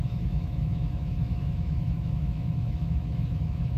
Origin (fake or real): fake